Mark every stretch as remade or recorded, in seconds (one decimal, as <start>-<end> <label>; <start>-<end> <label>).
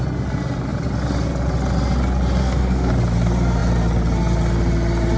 0.0-2.4 recorded; 2.4-2.9 remade; 2.9-5.2 recorded